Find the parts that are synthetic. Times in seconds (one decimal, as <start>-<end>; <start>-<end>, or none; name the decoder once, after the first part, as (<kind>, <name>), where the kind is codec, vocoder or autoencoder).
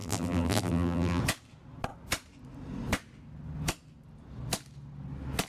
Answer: 0.0-1.2 (vocoder, BigVGAN v2)